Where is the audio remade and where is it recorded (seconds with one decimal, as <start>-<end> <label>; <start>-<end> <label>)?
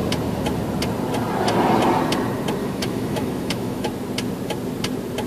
0.0-2.6 recorded; 2.6-3.9 remade; 3.9-5.3 recorded